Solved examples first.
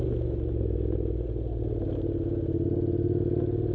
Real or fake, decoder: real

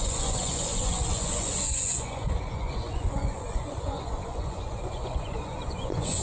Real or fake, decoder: fake, vocoder, Vocos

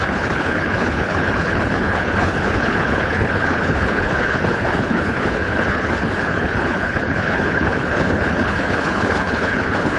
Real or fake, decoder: fake, codec, HILCodec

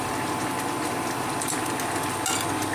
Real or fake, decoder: real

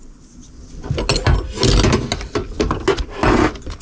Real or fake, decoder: real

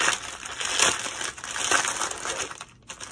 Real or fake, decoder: real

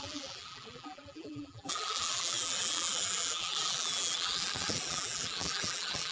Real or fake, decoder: fake, vocoder, BigVGAN v2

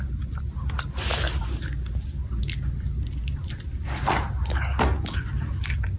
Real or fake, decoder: real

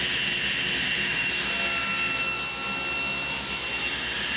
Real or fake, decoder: real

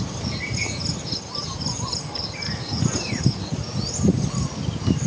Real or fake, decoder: real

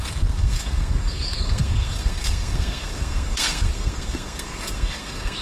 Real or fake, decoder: fake, codec, SNAC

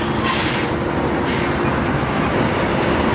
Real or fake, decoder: real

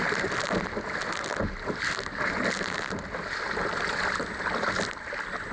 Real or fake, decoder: real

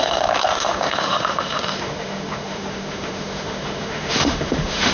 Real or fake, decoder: fake, autoencoder, DAC-VAE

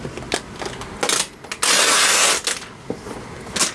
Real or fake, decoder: real